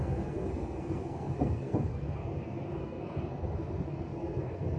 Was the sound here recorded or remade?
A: remade